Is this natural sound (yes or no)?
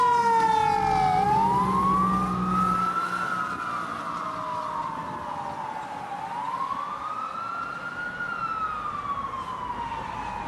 yes